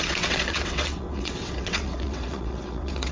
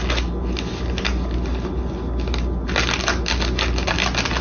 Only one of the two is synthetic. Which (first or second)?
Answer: first